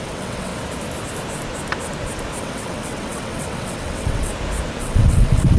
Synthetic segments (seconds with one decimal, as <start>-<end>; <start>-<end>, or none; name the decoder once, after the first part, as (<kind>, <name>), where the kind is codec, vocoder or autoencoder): 0.0-0.5 (vocoder, WaveNeXt); 2.4-4.3; 4.8-5.6